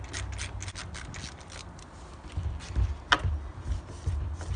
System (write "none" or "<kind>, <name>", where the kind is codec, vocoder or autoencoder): none